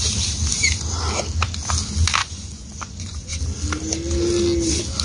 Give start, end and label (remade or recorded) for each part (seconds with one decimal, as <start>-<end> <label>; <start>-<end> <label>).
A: 0.0-2.2 recorded; 2.2-3.4 remade; 3.4-5.0 recorded